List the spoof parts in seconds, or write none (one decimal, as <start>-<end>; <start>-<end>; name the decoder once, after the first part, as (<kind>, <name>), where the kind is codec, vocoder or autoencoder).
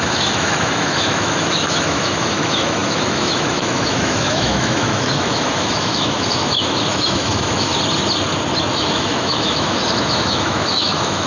0.0-7.7 (autoencoder, DAC-VAE); 8.7-11.3